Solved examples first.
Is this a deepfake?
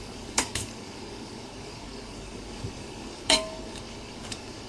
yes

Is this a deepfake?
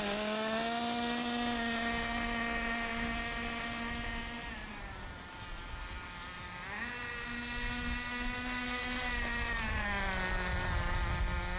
no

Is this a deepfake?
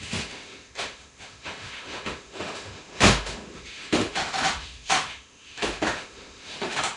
yes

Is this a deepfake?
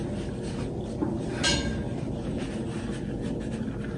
no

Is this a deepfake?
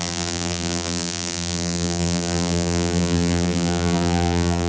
yes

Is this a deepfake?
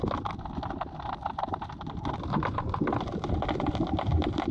no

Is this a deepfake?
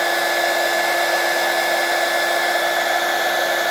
no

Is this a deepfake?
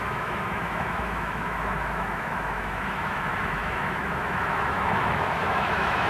yes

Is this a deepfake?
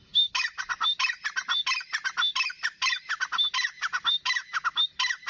no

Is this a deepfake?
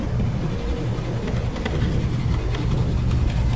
no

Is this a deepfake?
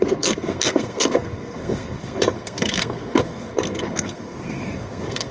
yes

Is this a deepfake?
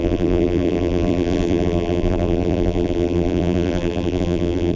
yes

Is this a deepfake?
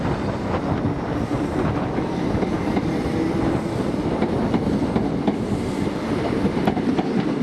yes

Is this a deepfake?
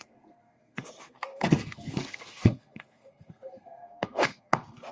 yes